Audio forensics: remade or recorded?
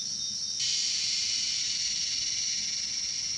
recorded